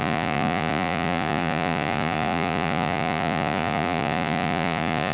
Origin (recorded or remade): remade